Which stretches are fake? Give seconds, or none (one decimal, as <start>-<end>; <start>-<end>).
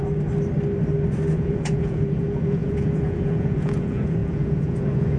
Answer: 1.3-5.2